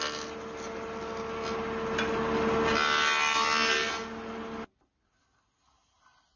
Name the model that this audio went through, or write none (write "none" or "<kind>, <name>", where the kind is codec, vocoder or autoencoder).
none